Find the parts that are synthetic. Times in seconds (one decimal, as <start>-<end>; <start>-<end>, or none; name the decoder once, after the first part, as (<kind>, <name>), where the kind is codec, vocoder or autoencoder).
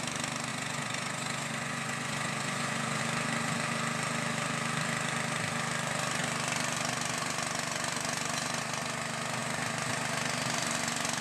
0.5-3.0 (vocoder, Vocos)